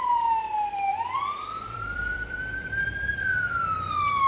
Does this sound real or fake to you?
fake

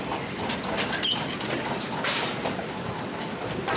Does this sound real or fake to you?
fake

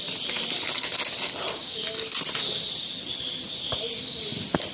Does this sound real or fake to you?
real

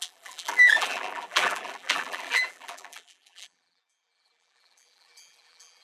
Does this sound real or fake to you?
fake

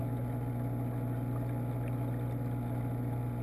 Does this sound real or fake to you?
real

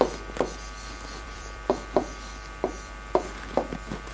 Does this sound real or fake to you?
fake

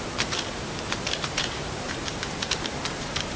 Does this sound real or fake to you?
fake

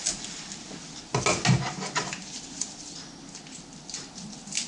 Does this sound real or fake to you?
real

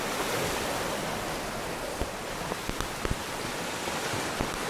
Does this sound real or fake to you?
fake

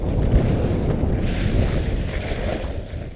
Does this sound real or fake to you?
fake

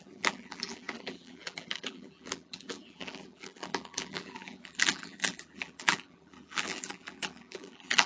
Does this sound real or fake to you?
fake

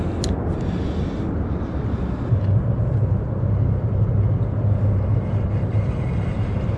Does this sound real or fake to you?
real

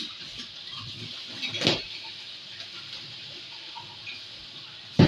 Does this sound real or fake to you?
real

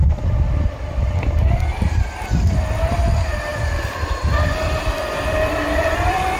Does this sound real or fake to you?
real